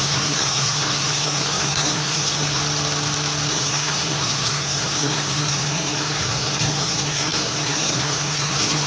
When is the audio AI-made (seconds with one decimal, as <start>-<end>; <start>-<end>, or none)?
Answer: 0.0-2.6; 3.5-8.9